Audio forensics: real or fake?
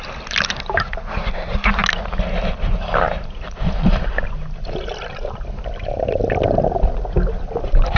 real